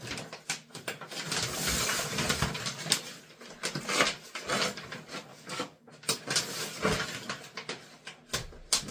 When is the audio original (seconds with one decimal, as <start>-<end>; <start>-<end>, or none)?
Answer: 0.0-5.3; 5.9-8.9